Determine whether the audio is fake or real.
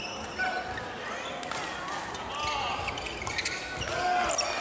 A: real